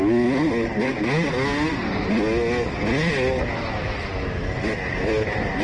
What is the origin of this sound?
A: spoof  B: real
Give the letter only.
B